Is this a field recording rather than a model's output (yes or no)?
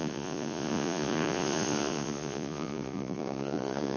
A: no